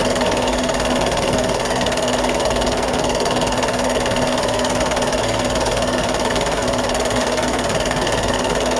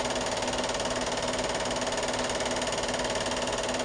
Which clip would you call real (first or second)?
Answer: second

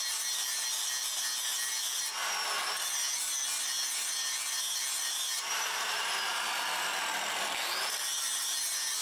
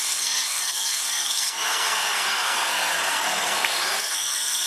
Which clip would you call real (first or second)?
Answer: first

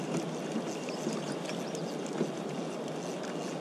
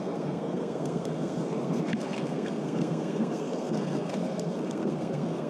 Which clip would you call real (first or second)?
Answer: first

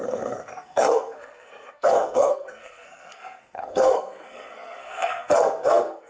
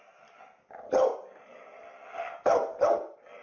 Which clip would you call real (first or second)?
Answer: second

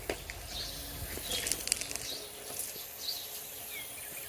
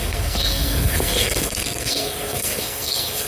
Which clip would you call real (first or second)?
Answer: first